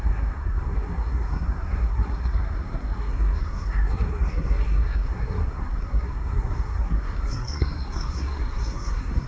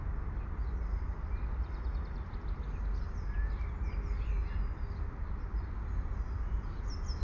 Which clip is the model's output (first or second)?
first